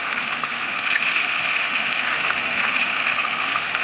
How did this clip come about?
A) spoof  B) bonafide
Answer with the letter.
A